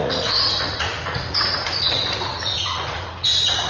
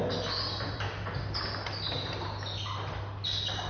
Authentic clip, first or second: second